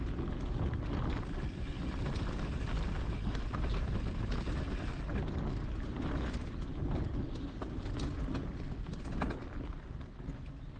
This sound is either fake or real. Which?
real